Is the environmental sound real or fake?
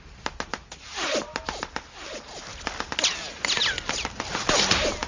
real